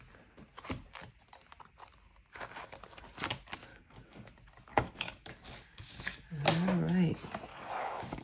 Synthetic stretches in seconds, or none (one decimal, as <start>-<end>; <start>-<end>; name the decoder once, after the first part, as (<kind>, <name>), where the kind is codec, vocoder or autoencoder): 3.7-4.3 (codec, DAC); 4.7-6.3; 7.5-8.2